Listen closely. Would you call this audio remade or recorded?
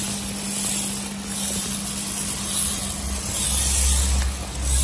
recorded